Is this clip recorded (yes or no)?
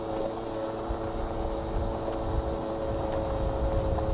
yes